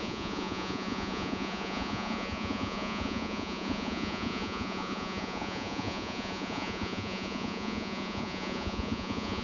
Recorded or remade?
remade